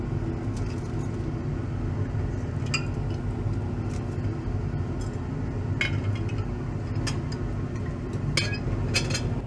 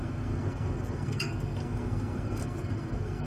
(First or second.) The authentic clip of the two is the first